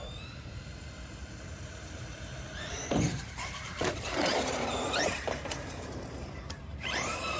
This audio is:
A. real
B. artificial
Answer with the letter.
B